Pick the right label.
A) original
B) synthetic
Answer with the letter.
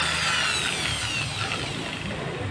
A